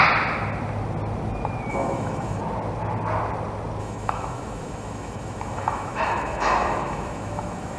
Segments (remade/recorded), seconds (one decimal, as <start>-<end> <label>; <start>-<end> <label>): 0.0-1.7 recorded; 1.7-2.4 remade; 2.4-3.8 recorded; 3.8-7.8 remade